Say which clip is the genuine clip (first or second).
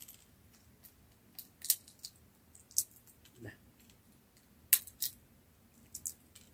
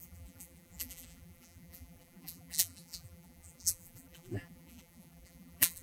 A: first